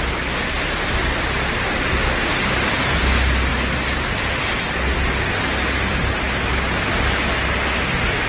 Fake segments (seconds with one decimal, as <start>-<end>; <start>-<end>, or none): none